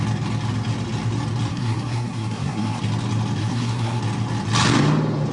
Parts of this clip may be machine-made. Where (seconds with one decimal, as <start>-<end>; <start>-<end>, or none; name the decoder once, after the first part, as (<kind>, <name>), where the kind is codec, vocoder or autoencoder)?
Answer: 1.5-2.8 (codec, SNAC); 3.4-4.0